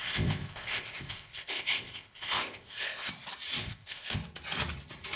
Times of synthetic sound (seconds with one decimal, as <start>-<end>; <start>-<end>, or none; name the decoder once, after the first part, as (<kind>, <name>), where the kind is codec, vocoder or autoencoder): 0.0-3.1 (codec, ZipCodec); 3.6-4.2